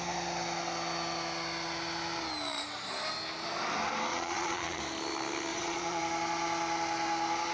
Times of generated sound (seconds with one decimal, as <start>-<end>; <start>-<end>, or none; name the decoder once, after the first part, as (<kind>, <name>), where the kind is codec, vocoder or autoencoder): 4.1-4.8 (vocoder, Vocos); 5.5-6.0